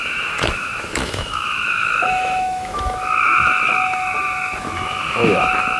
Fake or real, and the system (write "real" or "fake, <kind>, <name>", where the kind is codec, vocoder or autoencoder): fake, autoencoder, DAC-VAE